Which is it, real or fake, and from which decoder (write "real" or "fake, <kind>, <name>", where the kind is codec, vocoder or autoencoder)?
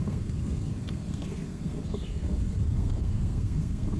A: fake, codec, SNAC